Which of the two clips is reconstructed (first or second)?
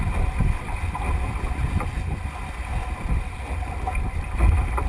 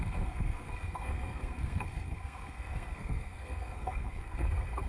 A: second